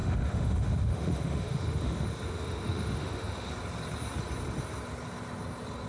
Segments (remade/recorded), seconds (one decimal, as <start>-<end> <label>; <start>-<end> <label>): 0.0-3.5 remade; 3.5-5.9 recorded